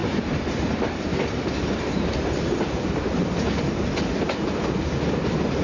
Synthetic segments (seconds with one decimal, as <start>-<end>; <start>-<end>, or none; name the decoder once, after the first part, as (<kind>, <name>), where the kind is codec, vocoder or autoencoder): 0.0-3.4 (vocoder, BigVGAN v2)